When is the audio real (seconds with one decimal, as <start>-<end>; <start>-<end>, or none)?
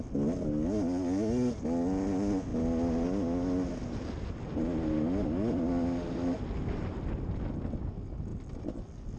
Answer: 0.0-9.2